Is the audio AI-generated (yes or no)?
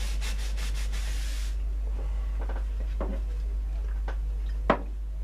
no